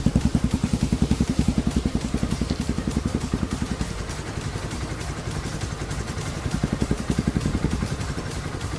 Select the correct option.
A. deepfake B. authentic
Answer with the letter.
A